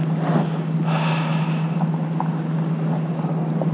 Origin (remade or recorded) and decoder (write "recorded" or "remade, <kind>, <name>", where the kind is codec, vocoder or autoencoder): recorded